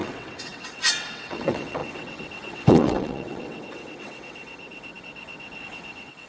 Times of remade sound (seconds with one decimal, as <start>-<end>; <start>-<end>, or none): 0.0-6.3